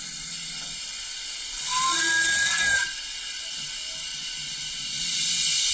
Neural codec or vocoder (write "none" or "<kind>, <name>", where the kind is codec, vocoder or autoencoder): none